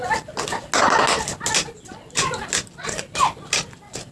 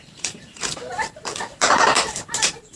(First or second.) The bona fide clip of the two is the first